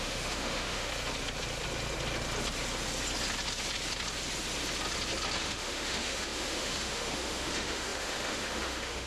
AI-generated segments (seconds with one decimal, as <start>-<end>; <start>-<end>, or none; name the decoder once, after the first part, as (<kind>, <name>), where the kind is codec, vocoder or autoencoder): 0.0-0.9 (autoencoder, DAC-VAE); 5.4-9.1